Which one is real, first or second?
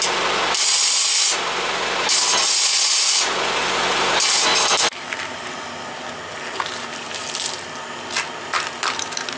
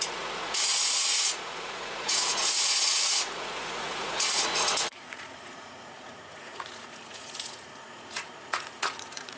first